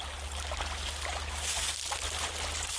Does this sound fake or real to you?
real